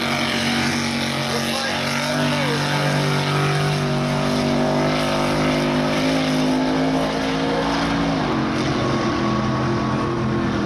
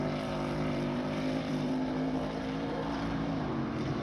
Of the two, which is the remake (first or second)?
second